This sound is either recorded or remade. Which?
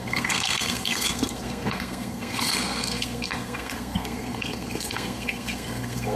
remade